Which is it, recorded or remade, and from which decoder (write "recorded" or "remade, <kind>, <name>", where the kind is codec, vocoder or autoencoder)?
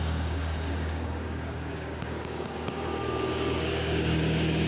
remade, codec, DAC